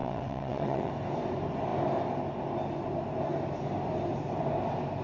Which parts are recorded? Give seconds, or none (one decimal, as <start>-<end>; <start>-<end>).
0.9-5.0